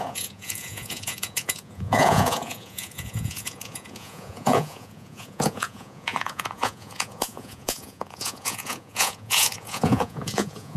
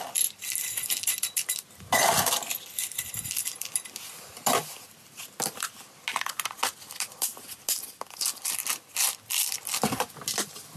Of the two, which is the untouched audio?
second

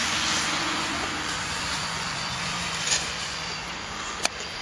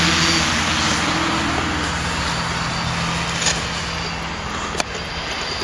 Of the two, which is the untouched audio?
second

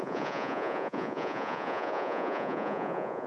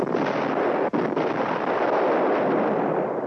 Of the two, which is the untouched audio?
second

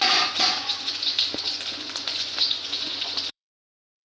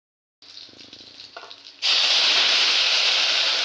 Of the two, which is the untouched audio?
second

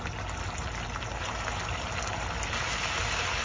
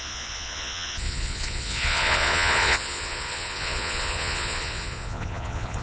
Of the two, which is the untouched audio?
first